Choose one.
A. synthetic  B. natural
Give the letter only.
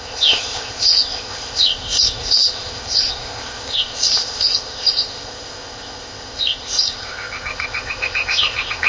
A